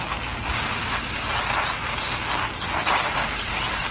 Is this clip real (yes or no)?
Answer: yes